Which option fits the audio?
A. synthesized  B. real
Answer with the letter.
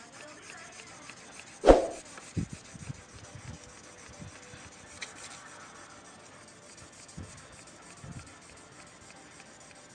B